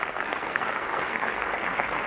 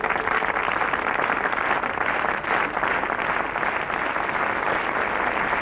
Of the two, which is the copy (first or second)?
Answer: first